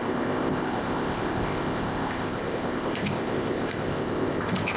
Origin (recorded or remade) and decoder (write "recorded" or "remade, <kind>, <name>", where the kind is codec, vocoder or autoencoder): remade, codec, ZipCodec